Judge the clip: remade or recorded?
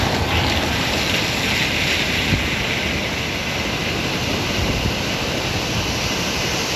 recorded